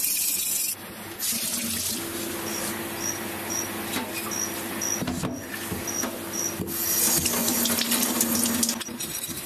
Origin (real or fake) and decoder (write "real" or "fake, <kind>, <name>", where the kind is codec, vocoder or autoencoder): real